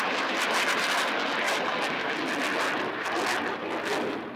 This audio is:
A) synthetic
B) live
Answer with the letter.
B